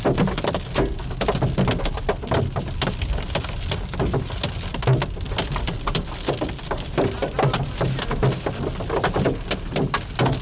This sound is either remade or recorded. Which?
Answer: recorded